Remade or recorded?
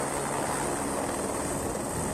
recorded